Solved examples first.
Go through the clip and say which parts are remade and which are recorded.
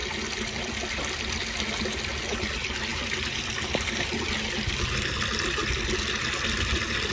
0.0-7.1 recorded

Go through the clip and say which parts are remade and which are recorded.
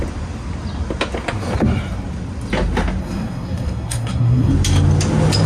0.0-3.0 recorded; 3.0-4.5 remade; 4.5-5.5 recorded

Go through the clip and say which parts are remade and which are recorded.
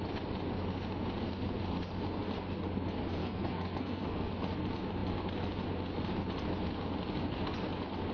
0.0-3.2 recorded; 3.2-4.3 remade; 4.3-8.1 recorded